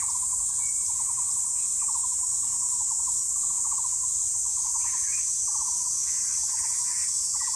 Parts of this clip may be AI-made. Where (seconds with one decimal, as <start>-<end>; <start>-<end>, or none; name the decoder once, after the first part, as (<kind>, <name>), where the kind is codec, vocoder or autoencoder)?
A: 0.7-1.6 (vocoder, BigVGAN v2); 4.5-5.9